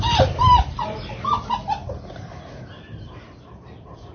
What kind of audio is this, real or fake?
fake